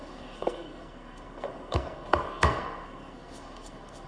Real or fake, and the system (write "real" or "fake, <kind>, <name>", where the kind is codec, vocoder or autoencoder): fake, codec, SNAC